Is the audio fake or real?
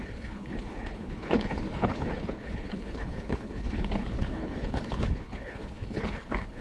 fake